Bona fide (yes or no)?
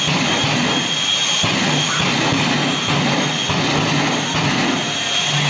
yes